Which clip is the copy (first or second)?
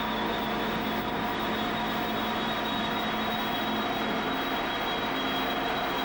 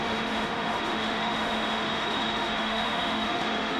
second